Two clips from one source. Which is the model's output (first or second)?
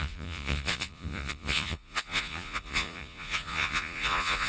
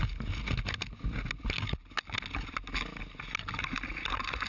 first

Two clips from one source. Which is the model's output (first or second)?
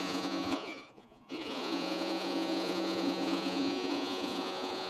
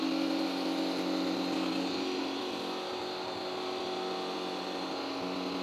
first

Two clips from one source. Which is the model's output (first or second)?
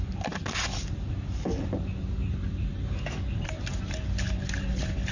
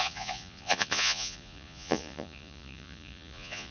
second